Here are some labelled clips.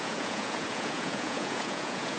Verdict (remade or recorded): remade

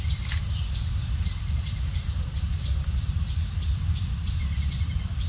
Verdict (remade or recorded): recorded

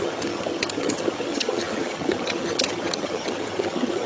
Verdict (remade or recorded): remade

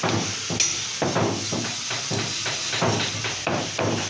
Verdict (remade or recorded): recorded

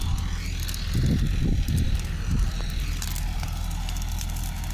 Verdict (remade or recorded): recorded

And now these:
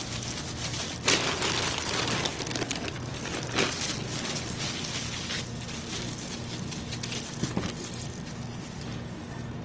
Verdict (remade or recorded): recorded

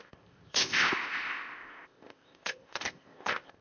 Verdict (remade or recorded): remade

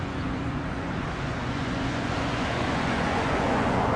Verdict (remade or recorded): remade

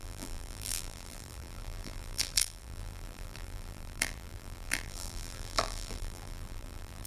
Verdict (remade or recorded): remade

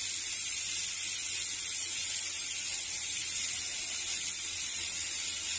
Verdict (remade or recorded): recorded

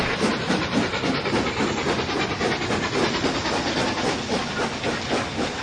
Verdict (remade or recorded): recorded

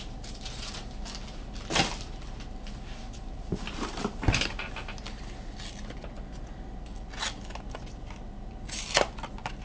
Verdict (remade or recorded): recorded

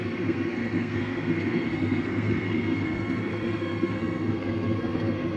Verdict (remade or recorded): remade